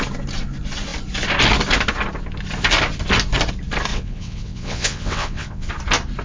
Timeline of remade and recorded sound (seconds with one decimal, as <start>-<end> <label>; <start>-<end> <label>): 0.0-3.9 recorded; 3.9-5.7 remade; 5.7-6.2 recorded